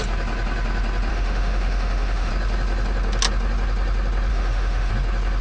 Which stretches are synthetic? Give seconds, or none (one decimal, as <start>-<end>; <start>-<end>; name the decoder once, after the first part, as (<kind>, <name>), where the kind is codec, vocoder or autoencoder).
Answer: 1.1-2.3 (autoencoder, DAC-VAE); 4.3-4.9